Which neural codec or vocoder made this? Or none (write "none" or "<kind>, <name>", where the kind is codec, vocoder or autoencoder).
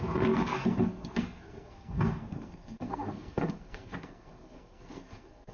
codec, SNAC